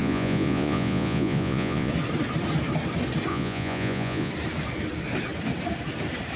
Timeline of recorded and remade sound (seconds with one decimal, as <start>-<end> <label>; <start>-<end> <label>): 0.0-1.9 remade; 1.9-3.3 recorded; 3.3-4.3 remade; 4.3-6.4 recorded